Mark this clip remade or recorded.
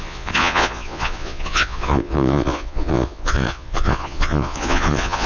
remade